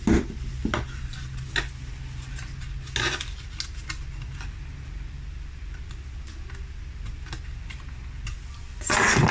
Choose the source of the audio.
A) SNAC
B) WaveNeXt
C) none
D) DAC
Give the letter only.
C